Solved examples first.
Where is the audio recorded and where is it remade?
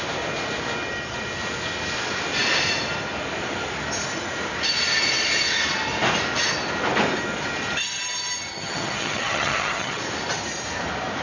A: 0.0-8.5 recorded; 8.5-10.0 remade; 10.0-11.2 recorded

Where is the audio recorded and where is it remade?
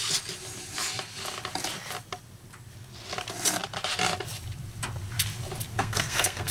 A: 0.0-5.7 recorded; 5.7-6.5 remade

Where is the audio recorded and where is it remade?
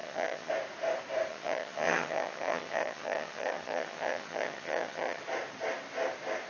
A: 0.0-0.5 remade; 0.5-1.3 recorded; 1.3-5.2 remade; 5.2-6.5 recorded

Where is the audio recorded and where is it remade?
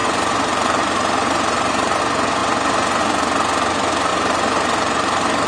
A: 0.0-2.0 remade; 2.0-4.1 recorded; 4.1-5.5 remade